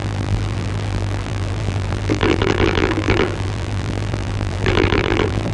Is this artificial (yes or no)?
yes